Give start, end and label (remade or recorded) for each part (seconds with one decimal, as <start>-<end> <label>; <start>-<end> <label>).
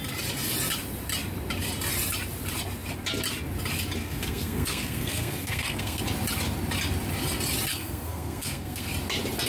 0.0-4.0 recorded; 4.0-6.0 remade; 6.0-7.7 recorded; 7.7-8.9 remade; 8.9-9.5 recorded